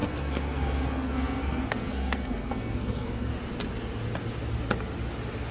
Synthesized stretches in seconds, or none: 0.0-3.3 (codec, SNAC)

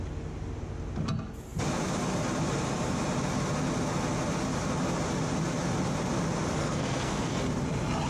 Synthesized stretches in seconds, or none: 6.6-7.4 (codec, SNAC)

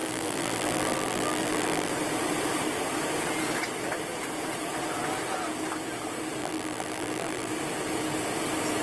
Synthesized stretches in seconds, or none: 0.0-1.9 (vocoder, BigVGAN v2); 6.4-7.5